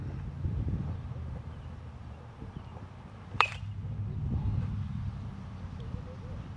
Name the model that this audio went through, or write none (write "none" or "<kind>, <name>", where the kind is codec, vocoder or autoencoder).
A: vocoder, BigVGAN v2